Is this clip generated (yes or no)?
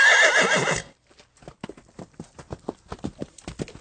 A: no